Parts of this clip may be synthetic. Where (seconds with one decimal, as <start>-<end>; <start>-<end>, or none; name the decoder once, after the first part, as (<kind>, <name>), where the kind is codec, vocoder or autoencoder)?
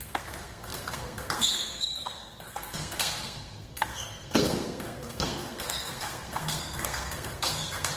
0.0-8.0 (codec, SNAC)